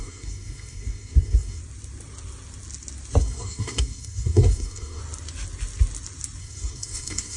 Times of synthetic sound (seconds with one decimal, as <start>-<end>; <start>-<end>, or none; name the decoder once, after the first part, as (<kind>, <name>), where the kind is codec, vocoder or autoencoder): 0.0-1.6 (codec, SNAC); 3.2-5.0; 6.4-7.4